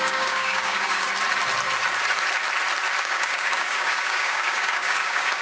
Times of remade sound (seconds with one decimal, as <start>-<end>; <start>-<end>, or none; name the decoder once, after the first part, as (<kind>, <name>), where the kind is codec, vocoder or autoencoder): 0.0-1.1 (codec, DAC); 3.0-5.4